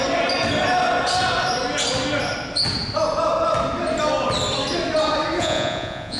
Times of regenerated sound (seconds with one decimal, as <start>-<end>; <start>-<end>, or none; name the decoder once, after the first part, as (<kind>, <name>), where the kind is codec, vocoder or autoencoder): 5.4-6.2 (vocoder, Vocos)